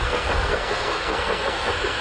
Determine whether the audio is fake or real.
fake